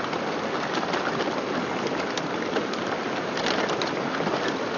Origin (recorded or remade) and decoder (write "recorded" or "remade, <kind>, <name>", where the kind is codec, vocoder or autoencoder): recorded